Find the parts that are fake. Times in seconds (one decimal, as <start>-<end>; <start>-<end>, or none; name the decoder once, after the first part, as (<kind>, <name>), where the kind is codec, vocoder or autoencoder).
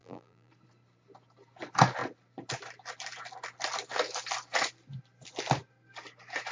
0.0-0.5 (vocoder, BigVGAN v2)